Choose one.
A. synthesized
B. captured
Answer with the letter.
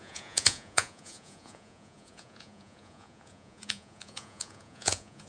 A